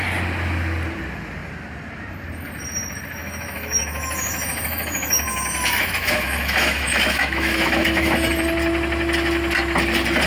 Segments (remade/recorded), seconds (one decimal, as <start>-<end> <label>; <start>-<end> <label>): 0.0-3.2 recorded; 3.2-8.3 remade; 8.3-10.3 recorded